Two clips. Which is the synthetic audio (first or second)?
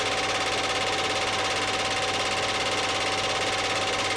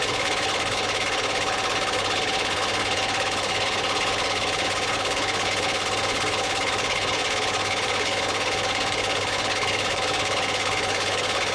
second